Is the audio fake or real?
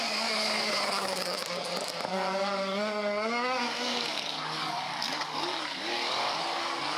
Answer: fake